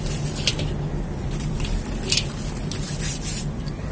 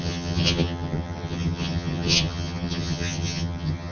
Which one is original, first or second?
first